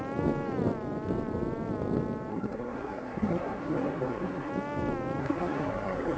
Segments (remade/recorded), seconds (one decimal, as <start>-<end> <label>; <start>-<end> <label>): 0.0-2.3 recorded; 2.3-4.5 remade; 4.5-5.2 recorded; 5.2-6.2 remade